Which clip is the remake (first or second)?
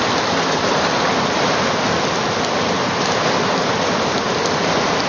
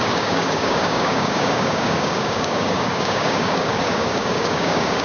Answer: second